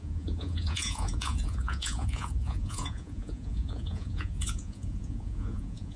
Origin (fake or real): fake